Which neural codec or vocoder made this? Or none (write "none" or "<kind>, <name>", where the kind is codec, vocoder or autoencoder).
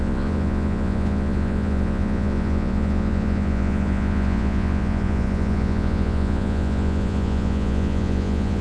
vocoder, Vocos